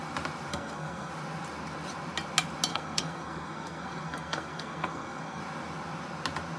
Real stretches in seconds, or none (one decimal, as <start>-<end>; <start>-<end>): 0.0-0.5; 1.1-2.7; 5.4-6.6